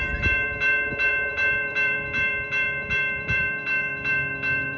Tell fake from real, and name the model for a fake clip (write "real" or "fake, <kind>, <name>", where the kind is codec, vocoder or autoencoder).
fake, vocoder, BigVGAN v2